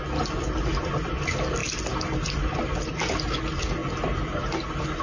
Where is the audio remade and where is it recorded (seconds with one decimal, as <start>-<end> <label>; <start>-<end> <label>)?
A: 0.0-5.0 recorded